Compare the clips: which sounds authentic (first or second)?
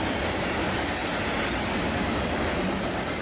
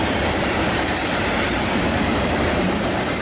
first